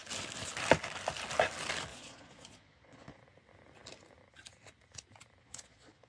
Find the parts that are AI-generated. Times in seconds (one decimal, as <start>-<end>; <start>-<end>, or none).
1.9-3.2; 5.4-6.1